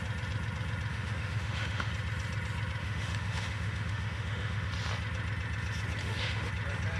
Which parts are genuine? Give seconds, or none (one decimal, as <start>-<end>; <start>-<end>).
0.0-0.9; 1.9-2.8; 4.7-6.0; 6.5-7.0